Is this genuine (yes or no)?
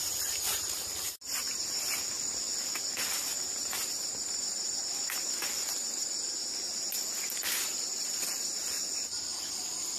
yes